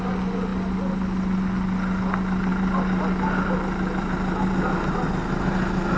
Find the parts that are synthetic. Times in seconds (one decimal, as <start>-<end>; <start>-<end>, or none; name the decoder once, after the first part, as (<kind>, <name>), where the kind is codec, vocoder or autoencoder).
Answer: none

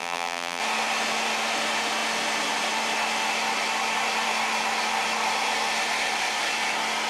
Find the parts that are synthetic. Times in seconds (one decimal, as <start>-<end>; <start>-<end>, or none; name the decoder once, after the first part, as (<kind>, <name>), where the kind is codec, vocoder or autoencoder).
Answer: 0.0-0.6 (vocoder, BigVGAN v2)

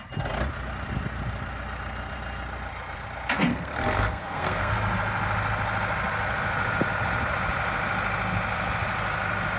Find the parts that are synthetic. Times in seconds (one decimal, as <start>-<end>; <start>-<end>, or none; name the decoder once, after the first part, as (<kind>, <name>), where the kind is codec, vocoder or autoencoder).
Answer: 3.5-4.7 (codec, SNAC)

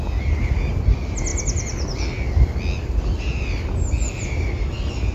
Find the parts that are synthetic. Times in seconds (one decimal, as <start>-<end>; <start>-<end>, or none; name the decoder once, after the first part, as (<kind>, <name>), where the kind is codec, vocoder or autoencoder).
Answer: none

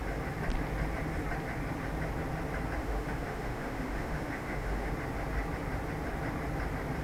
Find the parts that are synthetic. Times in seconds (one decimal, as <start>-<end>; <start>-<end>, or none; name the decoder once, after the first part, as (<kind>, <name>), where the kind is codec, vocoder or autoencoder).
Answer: 2.8-4.9 (autoencoder, DAC-VAE)

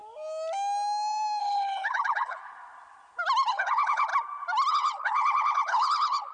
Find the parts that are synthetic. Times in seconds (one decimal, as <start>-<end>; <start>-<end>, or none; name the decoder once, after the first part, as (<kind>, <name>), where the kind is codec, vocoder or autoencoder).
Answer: 1.4-2.4 (codec, HILCodec); 3.5-4.1; 4.7-6.3